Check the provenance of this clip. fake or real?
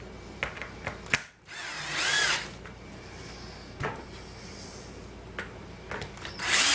real